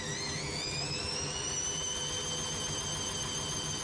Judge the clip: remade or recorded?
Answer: recorded